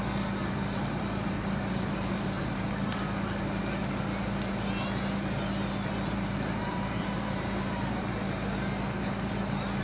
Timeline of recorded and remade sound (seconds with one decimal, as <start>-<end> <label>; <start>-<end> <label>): 0.0-0.4 recorded; 0.4-2.7 remade; 2.7-6.6 recorded; 6.6-8.0 remade; 8.0-9.8 recorded